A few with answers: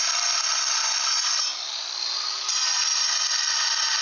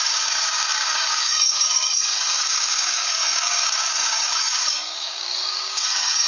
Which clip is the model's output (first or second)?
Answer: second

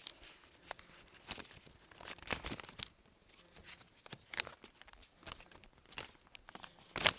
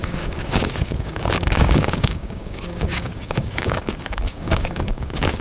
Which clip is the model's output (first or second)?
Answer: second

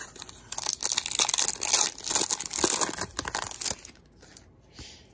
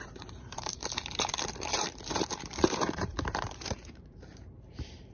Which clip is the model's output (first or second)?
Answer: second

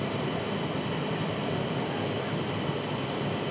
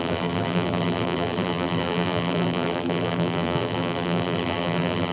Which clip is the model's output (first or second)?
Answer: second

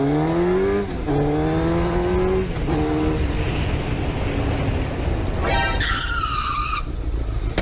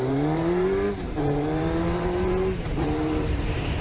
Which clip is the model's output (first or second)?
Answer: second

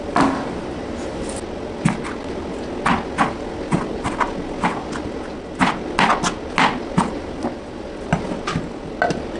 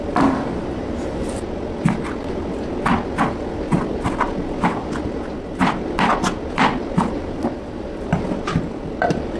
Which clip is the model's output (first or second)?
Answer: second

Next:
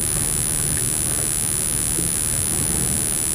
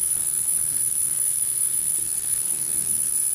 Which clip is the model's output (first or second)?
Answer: second